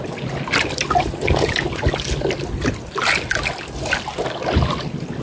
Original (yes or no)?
yes